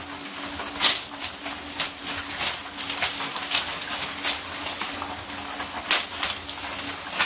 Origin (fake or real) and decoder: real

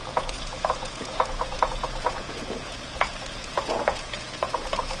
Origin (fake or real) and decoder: fake, vocoder, Vocos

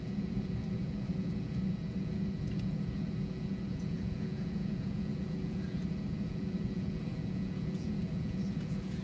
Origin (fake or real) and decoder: fake, vocoder, Vocos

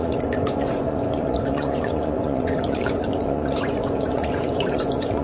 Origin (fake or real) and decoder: fake, vocoder, Vocos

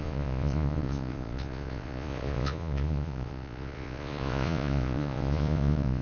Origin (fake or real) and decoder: fake, vocoder, Vocos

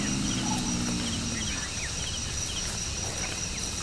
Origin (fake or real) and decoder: real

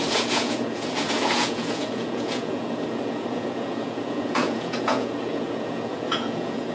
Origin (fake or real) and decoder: fake, vocoder, Vocos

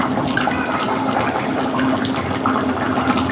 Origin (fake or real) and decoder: real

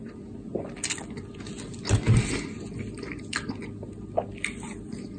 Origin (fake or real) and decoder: real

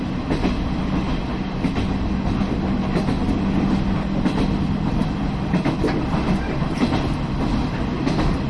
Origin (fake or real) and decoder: real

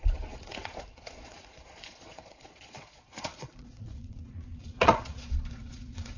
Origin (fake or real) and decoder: fake, vocoder, Vocos